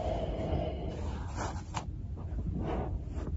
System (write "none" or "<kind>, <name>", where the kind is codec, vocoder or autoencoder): none